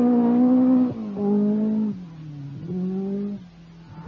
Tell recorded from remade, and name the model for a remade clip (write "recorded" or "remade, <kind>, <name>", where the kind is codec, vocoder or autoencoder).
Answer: recorded